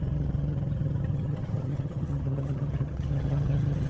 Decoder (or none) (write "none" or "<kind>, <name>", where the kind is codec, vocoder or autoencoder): vocoder, HiFi-GAN